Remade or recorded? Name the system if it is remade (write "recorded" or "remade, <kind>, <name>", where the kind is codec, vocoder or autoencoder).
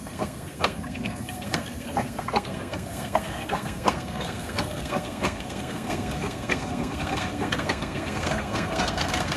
remade, codec, SNAC